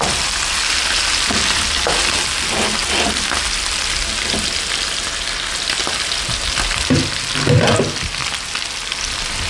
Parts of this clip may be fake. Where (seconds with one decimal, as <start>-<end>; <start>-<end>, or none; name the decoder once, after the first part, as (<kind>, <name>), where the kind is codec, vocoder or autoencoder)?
none